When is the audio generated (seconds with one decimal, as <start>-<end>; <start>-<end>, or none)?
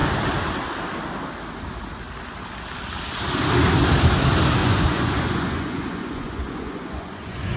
4.6-7.6